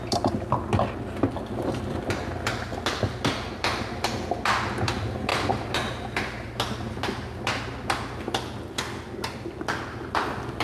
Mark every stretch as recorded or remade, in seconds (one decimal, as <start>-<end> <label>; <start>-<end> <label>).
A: 0.0-5.3 recorded; 5.3-7.6 remade; 7.6-10.6 recorded